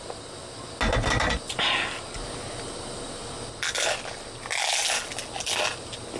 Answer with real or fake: real